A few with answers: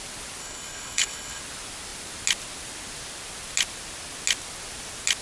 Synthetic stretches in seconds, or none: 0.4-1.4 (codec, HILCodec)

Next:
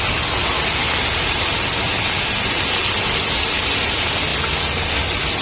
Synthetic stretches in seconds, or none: none

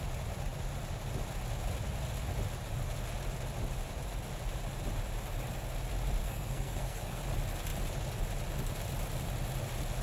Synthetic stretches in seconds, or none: 6.2-7.2 (codec, SNAC)

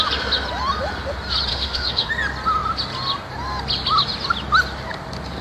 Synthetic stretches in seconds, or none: 1.5-2.1 (autoencoder, DAC-VAE)

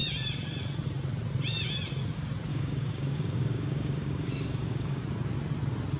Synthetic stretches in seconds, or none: 2.5-5.0 (codec, DAC)